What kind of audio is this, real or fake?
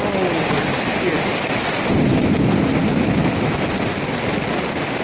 real